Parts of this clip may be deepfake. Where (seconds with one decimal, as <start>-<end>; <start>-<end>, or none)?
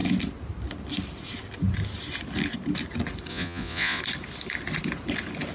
3.3-4.0